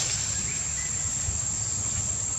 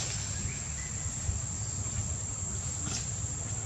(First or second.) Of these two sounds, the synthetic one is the first